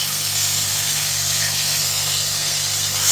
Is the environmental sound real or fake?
fake